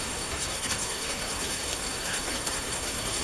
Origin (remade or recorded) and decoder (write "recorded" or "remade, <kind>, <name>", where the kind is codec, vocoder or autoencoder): remade, codec, SNAC